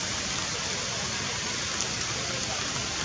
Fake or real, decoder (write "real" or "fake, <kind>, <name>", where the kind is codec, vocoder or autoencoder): real